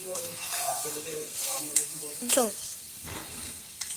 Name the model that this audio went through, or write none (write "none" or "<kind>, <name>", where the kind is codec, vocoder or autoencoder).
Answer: codec, SNAC